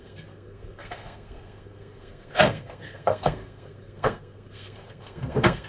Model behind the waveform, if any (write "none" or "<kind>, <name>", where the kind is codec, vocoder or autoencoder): codec, SNAC